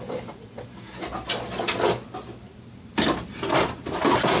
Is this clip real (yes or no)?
yes